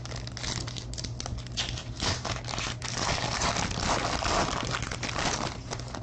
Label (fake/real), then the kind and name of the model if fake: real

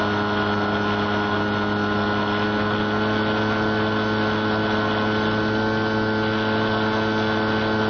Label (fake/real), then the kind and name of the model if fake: real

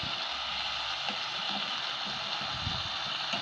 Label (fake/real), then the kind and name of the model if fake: real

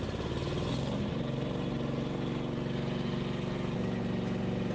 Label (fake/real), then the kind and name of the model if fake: real